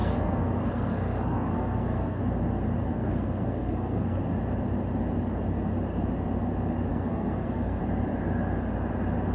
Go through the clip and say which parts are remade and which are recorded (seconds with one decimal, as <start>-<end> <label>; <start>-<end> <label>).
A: 0.0-2.2 remade; 2.2-2.9 recorded; 2.9-4.2 remade; 4.2-6.9 recorded; 6.9-7.8 remade; 7.8-9.3 recorded